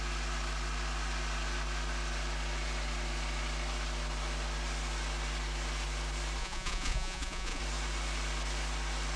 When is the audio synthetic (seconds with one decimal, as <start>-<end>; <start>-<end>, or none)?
6.4-7.6

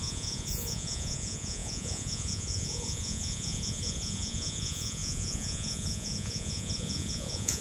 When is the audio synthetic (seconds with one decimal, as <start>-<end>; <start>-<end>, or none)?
0.0-7.6

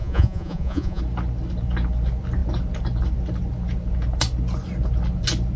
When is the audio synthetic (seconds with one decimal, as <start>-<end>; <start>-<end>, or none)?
0.0-1.0

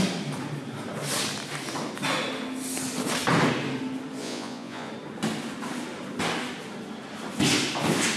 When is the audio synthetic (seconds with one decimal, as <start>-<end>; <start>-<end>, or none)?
4.2-4.9

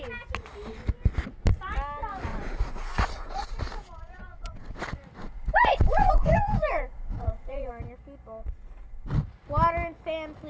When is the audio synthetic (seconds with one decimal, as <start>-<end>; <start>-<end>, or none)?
2.3-4.8; 5.2-7.7; 8.4-9.1

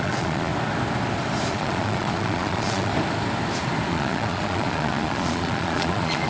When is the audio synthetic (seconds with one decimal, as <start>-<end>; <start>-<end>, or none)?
0.0-0.5; 1.5-2.9; 3.9-6.3